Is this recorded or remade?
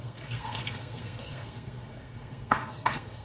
remade